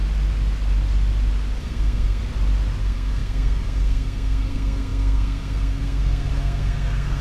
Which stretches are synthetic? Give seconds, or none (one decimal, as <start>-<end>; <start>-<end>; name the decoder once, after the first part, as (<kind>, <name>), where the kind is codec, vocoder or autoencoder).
1.6-2.2 (codec, SNAC); 2.8-7.2